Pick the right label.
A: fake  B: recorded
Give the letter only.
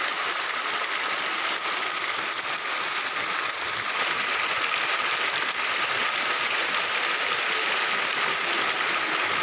B